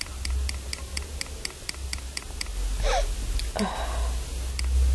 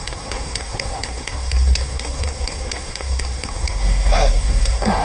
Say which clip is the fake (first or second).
second